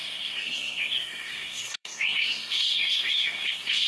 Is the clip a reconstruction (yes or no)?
yes